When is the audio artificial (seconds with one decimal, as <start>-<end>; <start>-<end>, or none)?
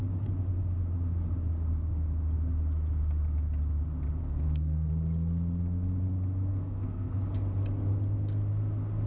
4.2-4.9; 6.5-7.2